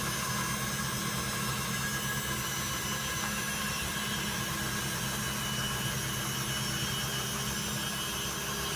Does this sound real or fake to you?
real